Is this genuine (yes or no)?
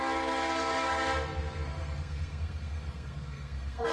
no